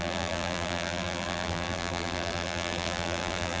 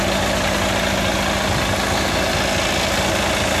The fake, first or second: first